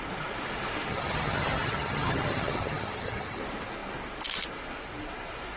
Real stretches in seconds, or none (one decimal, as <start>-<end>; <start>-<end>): 0.0-0.9; 3.4-5.6

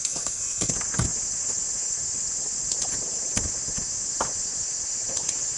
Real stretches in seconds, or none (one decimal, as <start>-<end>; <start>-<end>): 0.7-5.6

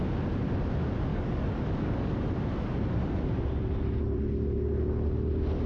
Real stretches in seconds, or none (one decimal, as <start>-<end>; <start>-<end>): 0.0-1.1; 2.2-5.7

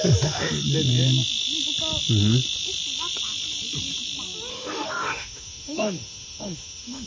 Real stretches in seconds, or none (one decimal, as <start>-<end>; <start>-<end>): 0.0-4.5

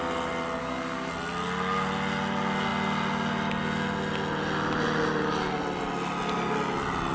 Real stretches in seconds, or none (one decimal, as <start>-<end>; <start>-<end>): 0.0-0.6; 1.1-7.1

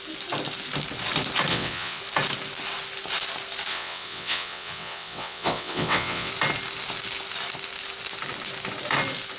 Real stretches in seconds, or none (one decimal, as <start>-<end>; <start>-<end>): 0.0-1.5; 2.0-3.7; 6.3-9.4